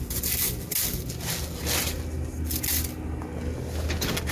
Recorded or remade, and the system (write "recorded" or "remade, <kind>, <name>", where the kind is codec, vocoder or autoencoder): recorded